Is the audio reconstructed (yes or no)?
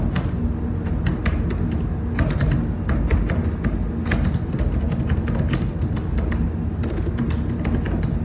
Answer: no